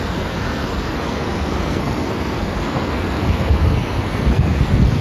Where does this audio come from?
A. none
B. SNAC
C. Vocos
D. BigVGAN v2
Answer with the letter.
B